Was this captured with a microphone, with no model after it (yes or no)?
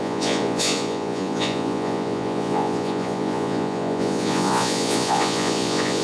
no